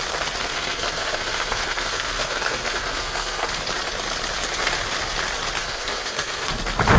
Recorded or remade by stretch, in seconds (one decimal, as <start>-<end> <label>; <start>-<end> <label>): 0.0-0.4 recorded; 0.4-3.5 remade; 3.5-5.6 recorded; 5.6-6.5 remade; 6.5-7.0 recorded